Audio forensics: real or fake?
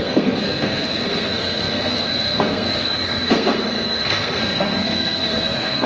fake